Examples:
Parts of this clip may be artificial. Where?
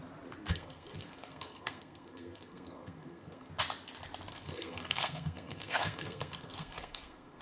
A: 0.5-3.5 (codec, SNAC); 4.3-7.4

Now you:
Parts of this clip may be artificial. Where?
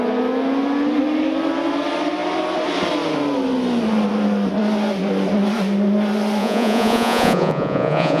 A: 6.4-8.2 (vocoder, Vocos)